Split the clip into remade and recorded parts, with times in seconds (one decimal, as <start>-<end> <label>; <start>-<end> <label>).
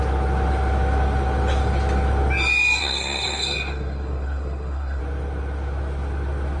0.0-2.8 recorded; 2.8-5.0 remade; 5.0-6.6 recorded